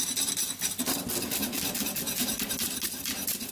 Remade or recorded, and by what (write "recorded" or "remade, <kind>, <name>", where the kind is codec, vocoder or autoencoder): recorded